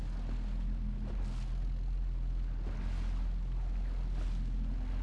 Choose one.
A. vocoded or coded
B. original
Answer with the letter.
B